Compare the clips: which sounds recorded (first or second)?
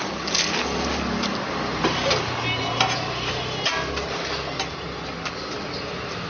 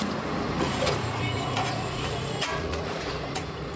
first